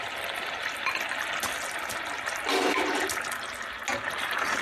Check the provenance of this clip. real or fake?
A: real